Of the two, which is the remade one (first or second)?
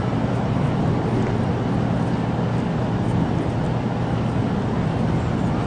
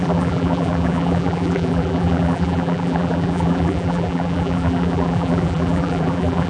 second